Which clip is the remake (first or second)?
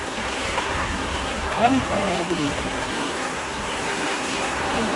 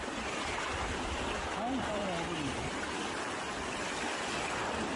first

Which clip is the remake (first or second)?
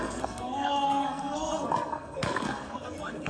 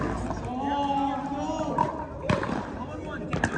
first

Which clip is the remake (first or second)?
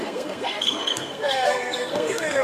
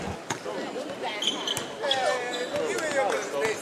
first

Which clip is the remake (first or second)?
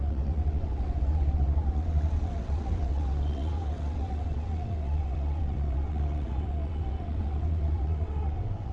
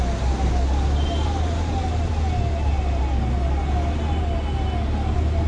first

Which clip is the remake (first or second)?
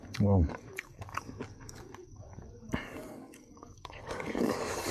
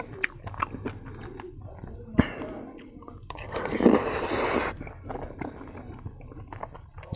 first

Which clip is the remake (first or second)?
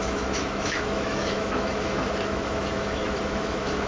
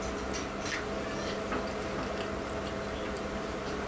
first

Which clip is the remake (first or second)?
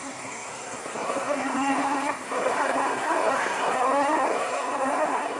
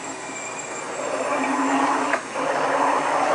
first